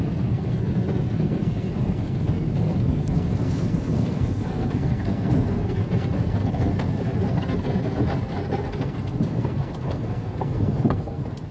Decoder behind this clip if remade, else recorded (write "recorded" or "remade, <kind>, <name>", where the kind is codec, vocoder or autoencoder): remade, codec, SNAC